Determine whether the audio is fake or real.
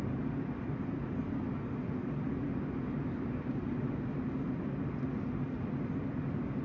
real